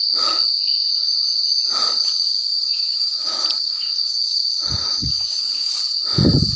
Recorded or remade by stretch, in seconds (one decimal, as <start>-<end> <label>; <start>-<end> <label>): 0.0-2.3 recorded; 2.3-5.8 remade; 5.8-6.6 recorded